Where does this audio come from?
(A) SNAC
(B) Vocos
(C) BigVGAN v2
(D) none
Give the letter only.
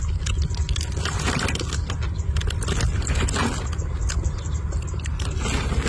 D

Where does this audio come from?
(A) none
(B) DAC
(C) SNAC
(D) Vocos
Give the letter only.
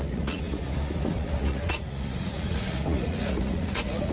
D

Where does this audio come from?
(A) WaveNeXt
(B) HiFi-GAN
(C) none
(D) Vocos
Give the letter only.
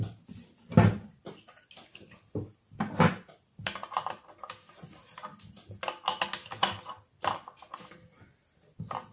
C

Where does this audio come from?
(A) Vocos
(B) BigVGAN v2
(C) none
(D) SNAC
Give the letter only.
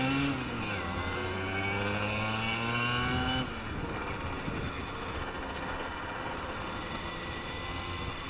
C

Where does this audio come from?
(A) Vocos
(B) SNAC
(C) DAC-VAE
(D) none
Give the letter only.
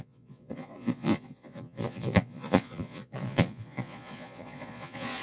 A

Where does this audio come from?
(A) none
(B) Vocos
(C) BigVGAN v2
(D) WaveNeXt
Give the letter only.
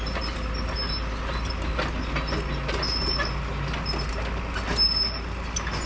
A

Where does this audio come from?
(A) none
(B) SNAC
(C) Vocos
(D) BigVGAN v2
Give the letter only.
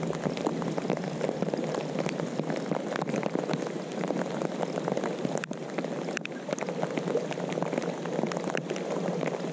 A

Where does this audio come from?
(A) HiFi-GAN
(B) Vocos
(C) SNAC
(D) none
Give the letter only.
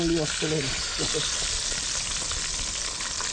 D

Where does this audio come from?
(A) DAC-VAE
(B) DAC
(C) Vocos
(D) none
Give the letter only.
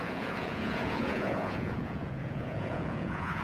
C